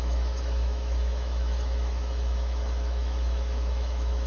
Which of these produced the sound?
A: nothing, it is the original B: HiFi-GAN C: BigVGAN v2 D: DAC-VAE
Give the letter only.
D